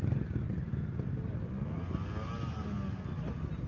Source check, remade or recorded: recorded